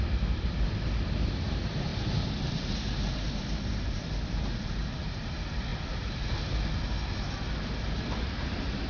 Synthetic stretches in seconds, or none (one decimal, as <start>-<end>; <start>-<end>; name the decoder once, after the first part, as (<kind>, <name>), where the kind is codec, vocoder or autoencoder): 0.0-1.9 (vocoder, BigVGAN v2); 2.5-5.7; 7.8-8.9